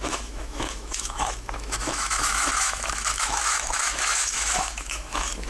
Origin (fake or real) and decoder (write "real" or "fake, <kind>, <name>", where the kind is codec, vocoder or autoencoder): fake, autoencoder, DAC-VAE